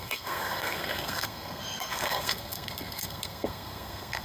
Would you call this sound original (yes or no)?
no